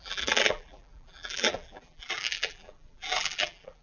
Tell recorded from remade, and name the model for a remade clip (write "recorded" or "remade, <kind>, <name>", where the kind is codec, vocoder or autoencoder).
remade, vocoder, BigVGAN v2